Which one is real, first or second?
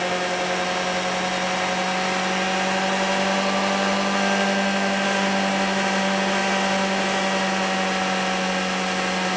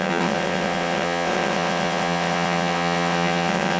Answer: first